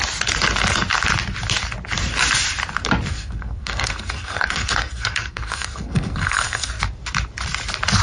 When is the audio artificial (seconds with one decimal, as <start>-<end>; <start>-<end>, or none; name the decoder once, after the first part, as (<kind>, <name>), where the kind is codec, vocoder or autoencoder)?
3.1-6.7 (codec, SNAC)